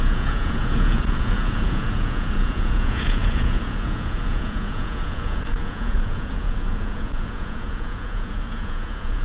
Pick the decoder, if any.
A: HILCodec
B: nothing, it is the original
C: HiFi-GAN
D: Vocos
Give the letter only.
D